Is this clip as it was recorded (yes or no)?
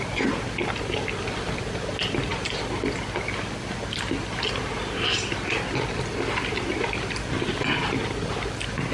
yes